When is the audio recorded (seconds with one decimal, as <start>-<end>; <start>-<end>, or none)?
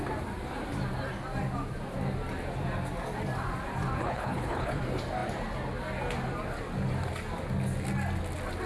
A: 0.0-4.0; 4.8-8.7